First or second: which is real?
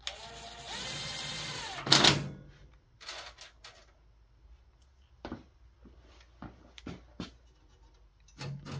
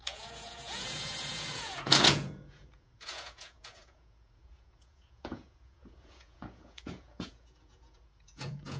first